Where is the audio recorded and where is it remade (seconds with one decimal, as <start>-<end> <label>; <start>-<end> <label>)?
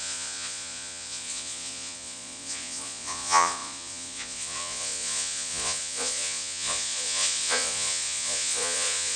0.0-9.2 remade